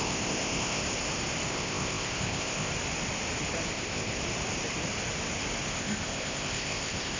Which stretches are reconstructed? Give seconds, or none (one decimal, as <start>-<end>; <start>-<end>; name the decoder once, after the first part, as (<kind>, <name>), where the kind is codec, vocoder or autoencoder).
0.0-0.8 (codec, ZipCodec); 1.5-2.7; 3.7-4.2; 5.7-7.2